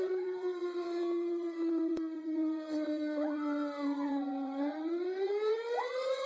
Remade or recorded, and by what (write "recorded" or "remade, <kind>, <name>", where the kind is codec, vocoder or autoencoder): remade, vocoder, WaveNeXt